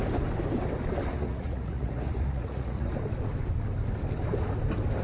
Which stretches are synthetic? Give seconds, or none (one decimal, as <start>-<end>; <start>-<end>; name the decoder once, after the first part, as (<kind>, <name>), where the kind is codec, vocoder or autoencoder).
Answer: 1.1-2.9 (vocoder, Vocos)